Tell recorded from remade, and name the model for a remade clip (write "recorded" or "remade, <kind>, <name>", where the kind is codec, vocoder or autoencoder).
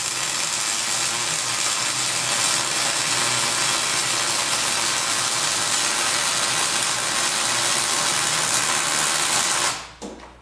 recorded